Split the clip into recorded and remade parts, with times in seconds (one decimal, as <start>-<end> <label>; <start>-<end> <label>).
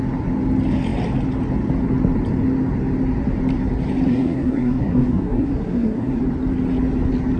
0.0-4.1 recorded; 4.1-6.2 remade; 6.2-7.4 recorded